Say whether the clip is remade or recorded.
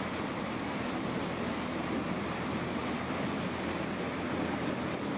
recorded